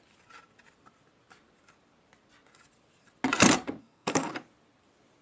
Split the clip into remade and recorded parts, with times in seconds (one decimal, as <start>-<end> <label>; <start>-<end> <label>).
0.0-3.8 recorded; 3.8-4.3 remade; 4.3-5.2 recorded